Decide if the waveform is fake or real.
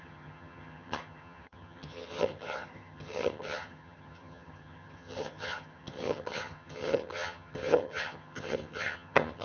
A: fake